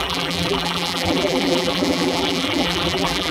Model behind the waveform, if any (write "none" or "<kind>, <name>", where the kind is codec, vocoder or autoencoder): vocoder, BigVGAN v2